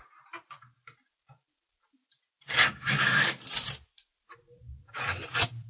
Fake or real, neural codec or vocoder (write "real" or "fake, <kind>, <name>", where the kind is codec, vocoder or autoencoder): real